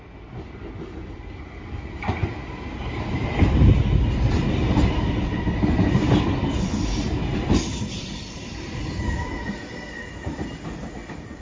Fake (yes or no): no